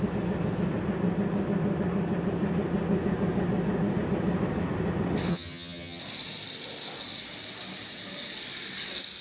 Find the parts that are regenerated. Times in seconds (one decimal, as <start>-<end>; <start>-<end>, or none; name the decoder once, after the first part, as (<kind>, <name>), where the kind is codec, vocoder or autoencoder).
5.3-6.0 (vocoder, HiFi-GAN)